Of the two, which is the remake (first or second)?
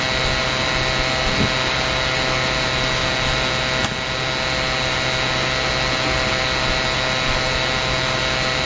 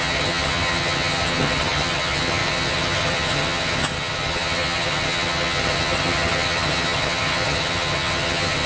second